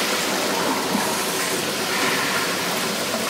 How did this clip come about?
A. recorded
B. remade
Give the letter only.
A